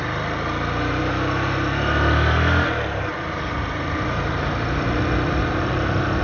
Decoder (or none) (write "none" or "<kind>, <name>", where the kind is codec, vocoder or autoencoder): none